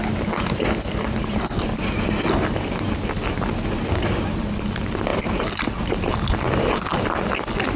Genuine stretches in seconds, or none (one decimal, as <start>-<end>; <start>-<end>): 0.0-7.8